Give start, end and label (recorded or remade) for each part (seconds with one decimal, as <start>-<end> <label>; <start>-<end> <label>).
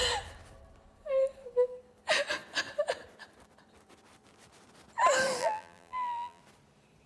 0.0-5.4 recorded; 5.4-6.4 remade; 6.4-7.1 recorded